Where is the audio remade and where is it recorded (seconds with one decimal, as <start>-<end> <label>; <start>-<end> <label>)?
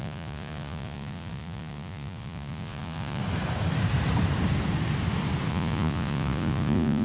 0.0-3.2 remade; 3.2-5.5 recorded; 5.5-7.0 remade